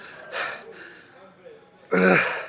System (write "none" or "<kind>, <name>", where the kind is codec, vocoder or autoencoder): none